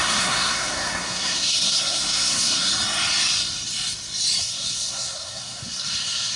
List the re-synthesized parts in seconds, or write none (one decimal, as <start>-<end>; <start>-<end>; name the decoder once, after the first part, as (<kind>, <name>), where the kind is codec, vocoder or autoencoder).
0.0-2.7 (codec, SNAC); 4.4-6.4